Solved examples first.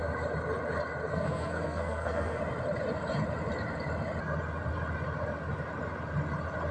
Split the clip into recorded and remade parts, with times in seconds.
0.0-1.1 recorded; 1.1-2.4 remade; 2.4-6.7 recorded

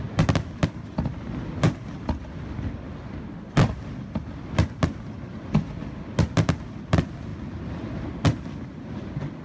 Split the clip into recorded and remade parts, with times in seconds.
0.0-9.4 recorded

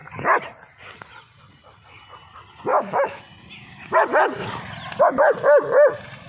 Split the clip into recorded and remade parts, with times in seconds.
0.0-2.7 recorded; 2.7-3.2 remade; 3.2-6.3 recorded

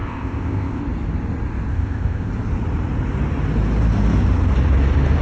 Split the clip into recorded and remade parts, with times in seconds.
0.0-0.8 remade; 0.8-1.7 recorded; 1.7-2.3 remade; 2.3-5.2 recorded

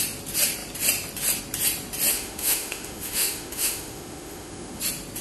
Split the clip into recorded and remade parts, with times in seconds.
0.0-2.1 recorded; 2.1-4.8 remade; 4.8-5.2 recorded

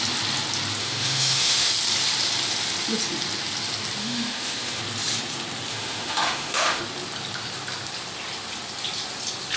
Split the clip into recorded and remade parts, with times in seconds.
0.0-0.8 recorded; 0.8-1.7 remade; 1.7-4.0 recorded; 4.0-4.8 remade; 4.8-5.7 recorded; 5.7-6.8 remade; 6.8-9.6 recorded

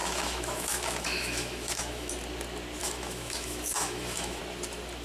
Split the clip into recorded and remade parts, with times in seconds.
0.0-2.1 remade; 2.1-2.8 recorded; 2.8-4.4 remade; 4.4-5.0 recorded

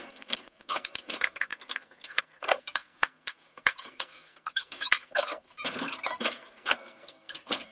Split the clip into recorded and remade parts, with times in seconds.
0.0-7.7 remade